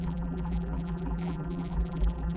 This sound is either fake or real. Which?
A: fake